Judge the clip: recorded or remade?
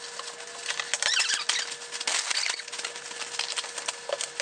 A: recorded